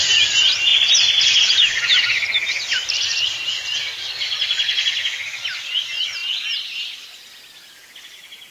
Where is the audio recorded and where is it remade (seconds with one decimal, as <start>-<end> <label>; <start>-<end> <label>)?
0.0-8.5 recorded